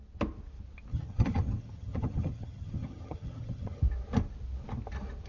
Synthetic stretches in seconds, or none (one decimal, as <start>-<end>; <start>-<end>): 0.9-3.8